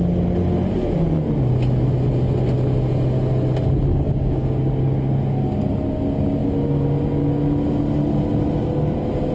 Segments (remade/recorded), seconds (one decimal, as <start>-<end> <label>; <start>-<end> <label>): 0.0-3.9 recorded; 3.9-4.5 remade; 4.5-9.3 recorded